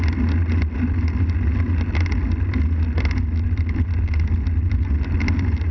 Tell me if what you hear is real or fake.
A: real